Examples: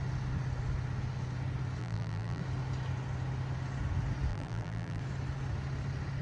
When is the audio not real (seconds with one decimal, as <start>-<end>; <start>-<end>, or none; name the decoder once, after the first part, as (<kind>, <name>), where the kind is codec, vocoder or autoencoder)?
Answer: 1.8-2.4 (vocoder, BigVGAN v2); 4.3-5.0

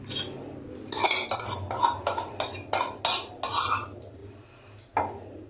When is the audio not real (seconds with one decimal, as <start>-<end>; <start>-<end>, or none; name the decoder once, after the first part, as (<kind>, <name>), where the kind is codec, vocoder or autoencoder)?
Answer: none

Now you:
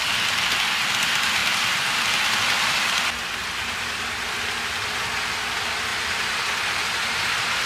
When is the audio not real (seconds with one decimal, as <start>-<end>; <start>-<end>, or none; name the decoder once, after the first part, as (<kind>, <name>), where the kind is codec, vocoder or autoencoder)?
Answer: 5.9-6.4 (vocoder, BigVGAN v2)